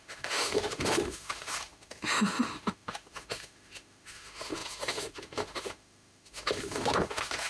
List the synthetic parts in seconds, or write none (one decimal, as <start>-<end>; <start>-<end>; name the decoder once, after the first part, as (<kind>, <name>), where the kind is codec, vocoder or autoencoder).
0.0-7.5 (autoencoder, DAC-VAE)